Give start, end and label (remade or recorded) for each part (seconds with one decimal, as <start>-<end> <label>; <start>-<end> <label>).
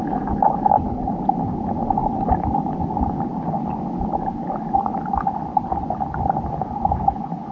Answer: 0.0-2.0 remade; 2.0-6.5 recorded; 6.5-7.5 remade